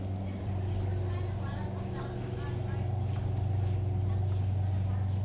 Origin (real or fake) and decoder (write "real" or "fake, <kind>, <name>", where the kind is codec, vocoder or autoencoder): real